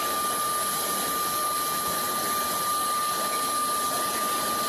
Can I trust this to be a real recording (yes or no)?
yes